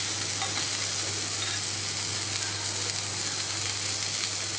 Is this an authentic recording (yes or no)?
yes